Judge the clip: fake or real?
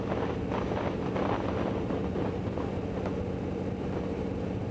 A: real